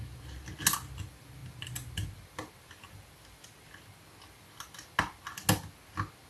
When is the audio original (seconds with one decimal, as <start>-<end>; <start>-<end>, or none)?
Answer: 0.0-6.3